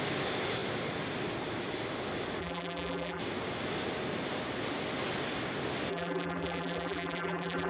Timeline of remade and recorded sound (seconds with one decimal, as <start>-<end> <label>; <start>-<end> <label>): 0.0-2.4 recorded; 2.4-3.2 remade; 3.2-5.9 recorded; 5.9-7.7 remade